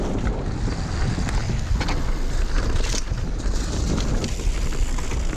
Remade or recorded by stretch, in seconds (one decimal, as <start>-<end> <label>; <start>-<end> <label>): 0.0-5.4 recorded